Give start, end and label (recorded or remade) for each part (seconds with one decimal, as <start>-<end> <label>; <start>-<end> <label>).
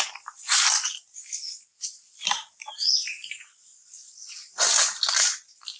0.0-5.8 recorded